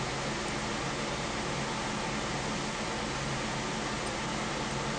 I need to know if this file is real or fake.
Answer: real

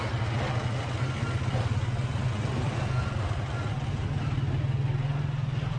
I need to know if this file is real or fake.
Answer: real